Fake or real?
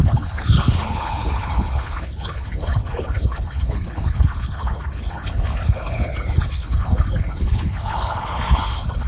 fake